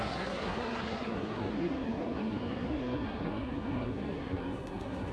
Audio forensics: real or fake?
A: fake